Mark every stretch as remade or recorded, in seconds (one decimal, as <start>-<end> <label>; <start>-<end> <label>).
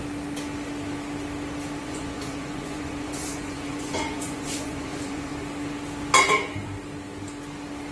0.0-1.8 recorded; 1.8-5.3 remade; 5.3-7.9 recorded